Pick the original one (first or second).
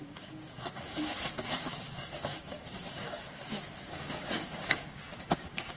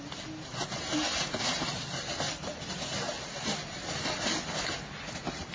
second